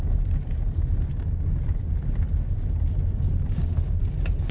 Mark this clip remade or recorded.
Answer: recorded